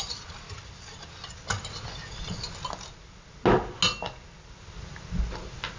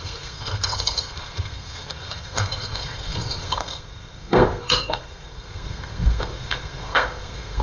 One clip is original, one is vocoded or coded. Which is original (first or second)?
first